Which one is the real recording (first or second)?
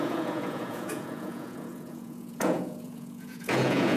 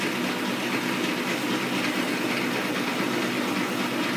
second